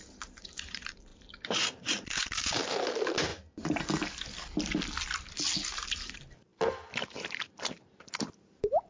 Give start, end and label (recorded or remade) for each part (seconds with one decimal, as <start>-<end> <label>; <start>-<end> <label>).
0.0-3.3 remade; 3.3-5.7 recorded; 5.7-8.9 remade